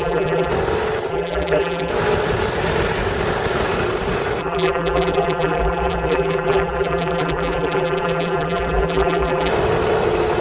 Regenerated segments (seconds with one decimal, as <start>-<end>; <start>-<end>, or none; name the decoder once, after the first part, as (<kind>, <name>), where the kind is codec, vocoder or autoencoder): 0.0-0.5 (vocoder, BigVGAN v2); 1.1-1.9; 4.4-9.5